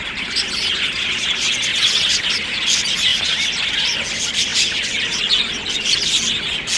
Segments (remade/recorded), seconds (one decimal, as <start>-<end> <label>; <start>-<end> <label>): 0.0-1.7 recorded; 1.7-2.3 remade; 2.3-6.8 recorded